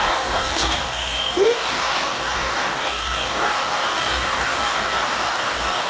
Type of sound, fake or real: fake